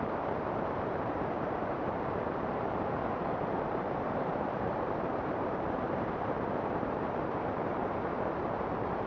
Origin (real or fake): fake